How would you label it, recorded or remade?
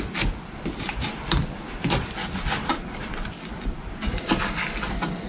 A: recorded